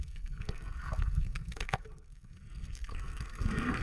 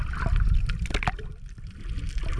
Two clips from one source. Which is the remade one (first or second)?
first